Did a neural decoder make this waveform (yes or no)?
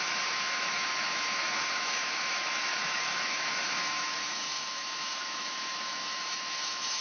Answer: yes